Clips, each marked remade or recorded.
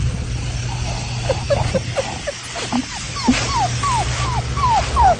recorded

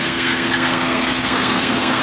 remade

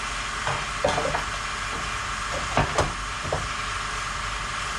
recorded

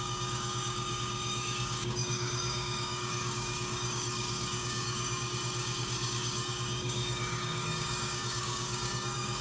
remade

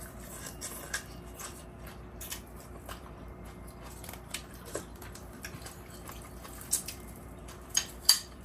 remade